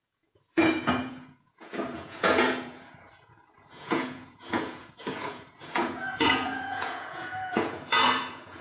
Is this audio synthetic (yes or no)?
yes